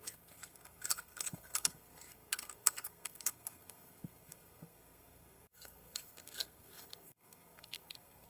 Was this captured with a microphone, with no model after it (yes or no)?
no